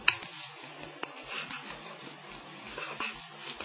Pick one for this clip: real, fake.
real